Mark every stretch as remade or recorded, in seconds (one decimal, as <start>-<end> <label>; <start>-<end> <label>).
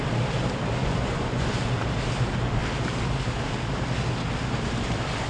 0.0-0.8 recorded; 0.8-1.7 remade; 1.7-5.3 recorded